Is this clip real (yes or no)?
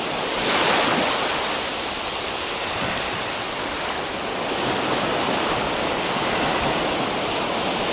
yes